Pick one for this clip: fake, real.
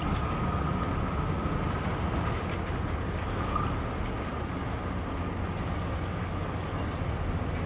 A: real